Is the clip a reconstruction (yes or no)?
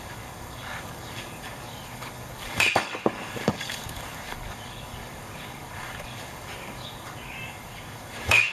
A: yes